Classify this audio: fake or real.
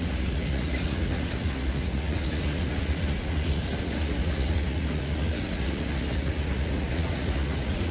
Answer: fake